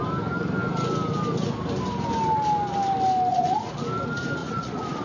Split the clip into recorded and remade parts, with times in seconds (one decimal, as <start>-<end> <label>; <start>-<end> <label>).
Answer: 0.0-3.3 recorded; 3.3-3.8 remade; 3.8-4.4 recorded; 4.4-5.0 remade